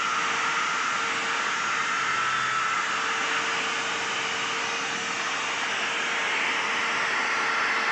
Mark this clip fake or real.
real